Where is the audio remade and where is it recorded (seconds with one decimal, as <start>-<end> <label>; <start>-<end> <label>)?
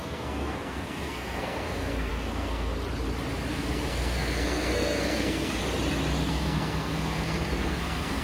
0.0-2.7 remade; 2.7-3.5 recorded; 3.5-5.6 remade; 5.6-6.3 recorded; 6.3-8.2 remade